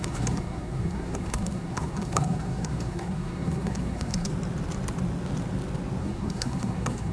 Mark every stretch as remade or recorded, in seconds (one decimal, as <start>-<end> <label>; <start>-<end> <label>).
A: 0.0-4.3 remade; 4.3-6.0 recorded; 6.0-7.1 remade

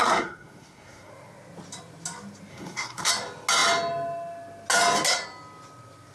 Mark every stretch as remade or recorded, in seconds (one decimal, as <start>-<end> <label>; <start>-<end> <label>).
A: 0.0-1.1 remade; 1.1-2.5 recorded; 2.5-3.1 remade; 3.1-6.1 recorded